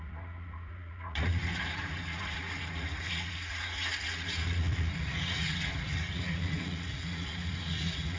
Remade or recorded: remade